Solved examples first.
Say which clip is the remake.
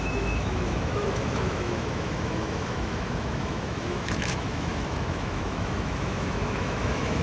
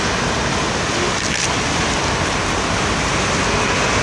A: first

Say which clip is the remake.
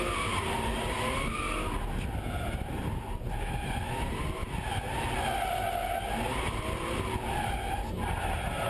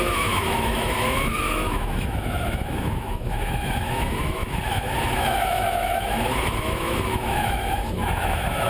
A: second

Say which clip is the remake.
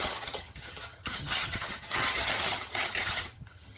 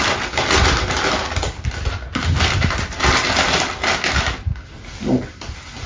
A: first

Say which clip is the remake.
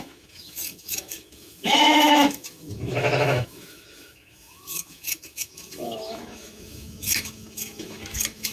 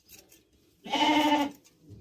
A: first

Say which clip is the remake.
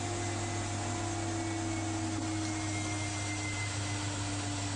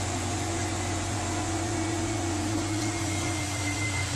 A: second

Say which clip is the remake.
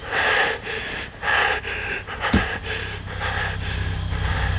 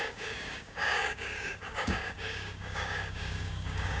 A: second